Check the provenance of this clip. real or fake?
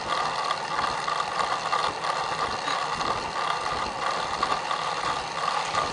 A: real